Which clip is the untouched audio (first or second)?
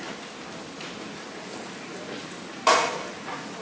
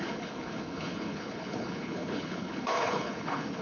first